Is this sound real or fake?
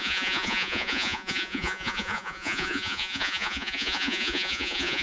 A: fake